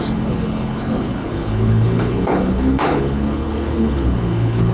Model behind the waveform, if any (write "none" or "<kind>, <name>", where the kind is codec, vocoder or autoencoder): codec, HILCodec